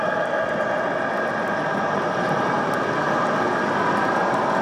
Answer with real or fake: real